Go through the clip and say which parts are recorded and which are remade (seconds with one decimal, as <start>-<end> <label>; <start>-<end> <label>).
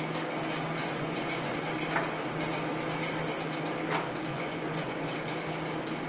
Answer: 0.0-0.8 recorded; 0.8-1.6 remade; 1.6-4.3 recorded; 4.3-5.1 remade; 5.1-6.1 recorded